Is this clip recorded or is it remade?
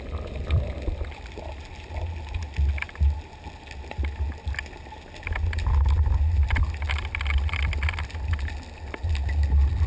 recorded